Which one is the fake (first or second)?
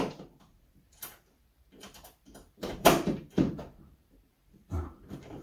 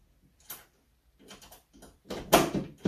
first